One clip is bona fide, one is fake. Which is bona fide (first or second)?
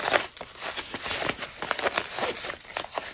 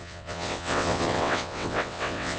first